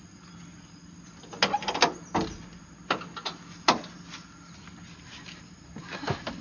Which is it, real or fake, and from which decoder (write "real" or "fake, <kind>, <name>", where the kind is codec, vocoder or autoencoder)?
real